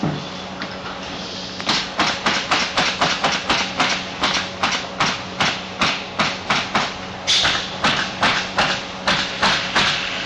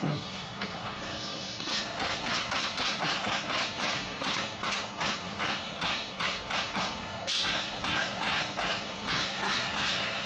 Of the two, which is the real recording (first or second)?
first